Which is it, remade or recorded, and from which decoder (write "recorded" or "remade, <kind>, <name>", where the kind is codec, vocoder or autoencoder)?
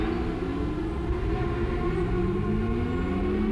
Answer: recorded